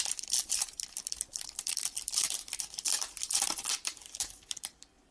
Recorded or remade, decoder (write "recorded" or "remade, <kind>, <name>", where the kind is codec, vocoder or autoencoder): remade, vocoder, BigVGAN v2